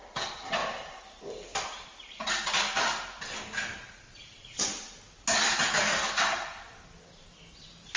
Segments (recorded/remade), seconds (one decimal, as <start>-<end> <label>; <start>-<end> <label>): 0.0-0.6 recorded; 0.6-2.3 remade; 2.3-8.0 recorded